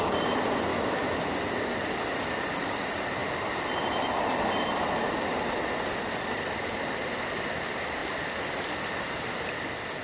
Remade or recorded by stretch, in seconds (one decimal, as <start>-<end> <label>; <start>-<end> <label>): 0.0-0.7 recorded; 0.7-1.3 remade; 1.3-10.0 recorded